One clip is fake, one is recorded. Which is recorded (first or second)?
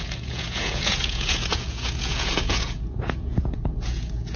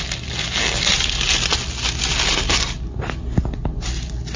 second